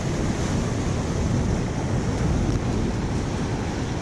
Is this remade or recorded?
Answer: recorded